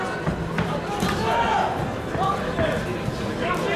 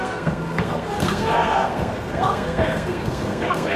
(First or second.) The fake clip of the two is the second